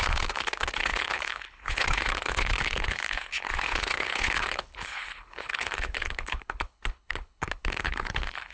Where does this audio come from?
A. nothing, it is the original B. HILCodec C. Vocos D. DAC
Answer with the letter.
B